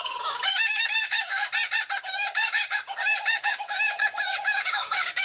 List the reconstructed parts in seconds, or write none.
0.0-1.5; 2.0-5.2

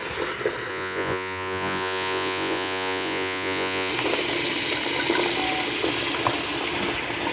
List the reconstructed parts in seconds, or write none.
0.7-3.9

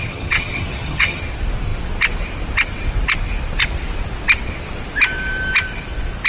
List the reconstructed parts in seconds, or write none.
0.0-1.2

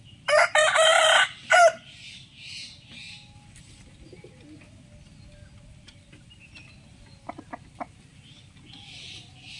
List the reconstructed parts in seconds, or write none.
none

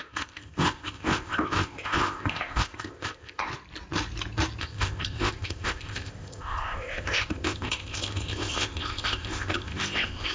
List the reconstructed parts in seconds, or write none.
0.0-3.5; 4.6-10.3